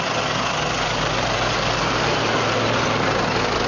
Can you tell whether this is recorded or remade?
recorded